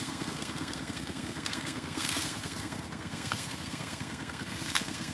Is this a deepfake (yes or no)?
yes